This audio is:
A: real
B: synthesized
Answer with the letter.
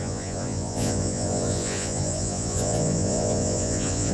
B